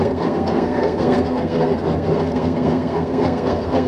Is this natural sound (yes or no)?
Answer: no